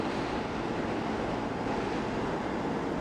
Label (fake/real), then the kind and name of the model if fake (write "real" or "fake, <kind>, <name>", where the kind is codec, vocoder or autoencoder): real